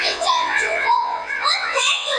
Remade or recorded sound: remade